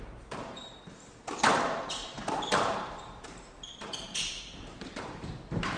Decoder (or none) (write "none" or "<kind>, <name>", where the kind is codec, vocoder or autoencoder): vocoder, BigVGAN v2